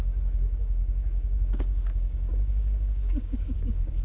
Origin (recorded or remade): remade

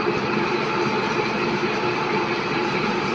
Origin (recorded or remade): recorded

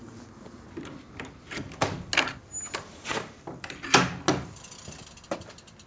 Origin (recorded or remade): recorded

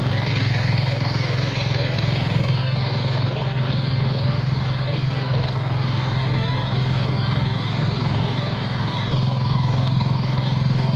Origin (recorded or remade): remade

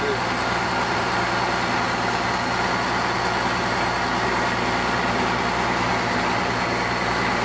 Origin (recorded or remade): recorded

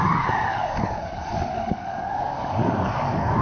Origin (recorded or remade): remade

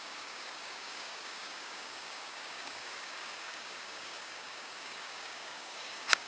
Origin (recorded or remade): remade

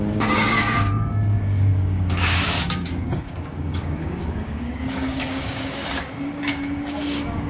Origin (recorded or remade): remade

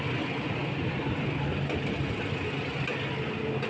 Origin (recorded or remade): recorded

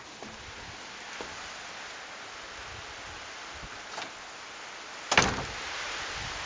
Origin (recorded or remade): recorded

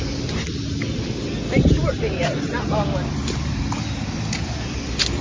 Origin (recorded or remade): recorded